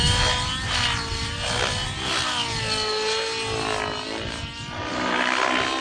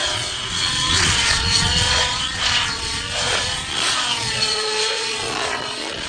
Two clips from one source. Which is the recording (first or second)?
first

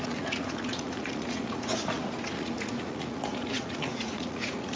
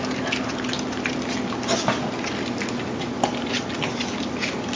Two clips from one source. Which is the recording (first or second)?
second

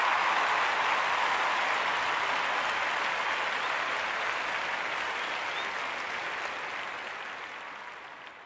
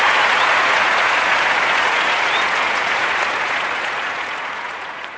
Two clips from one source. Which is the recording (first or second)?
first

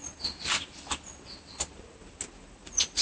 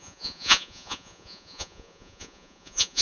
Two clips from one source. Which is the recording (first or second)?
first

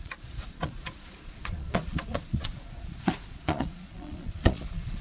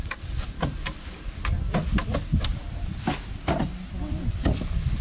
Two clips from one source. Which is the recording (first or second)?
second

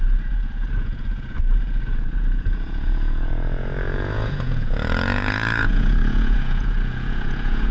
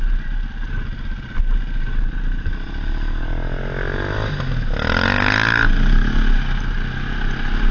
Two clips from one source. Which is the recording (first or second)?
second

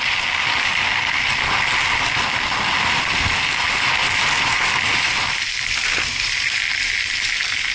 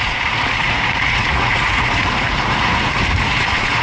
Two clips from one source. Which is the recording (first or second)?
first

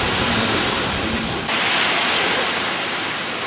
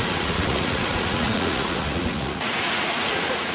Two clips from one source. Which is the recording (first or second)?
first